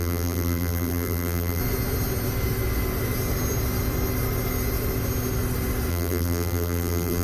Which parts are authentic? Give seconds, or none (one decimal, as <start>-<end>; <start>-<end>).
1.6-5.9